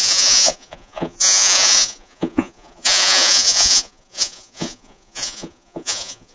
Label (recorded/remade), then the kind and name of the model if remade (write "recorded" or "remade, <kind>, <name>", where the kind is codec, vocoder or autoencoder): remade, vocoder, Vocos